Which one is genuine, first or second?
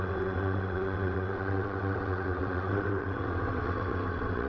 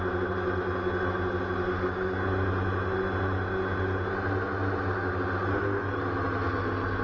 second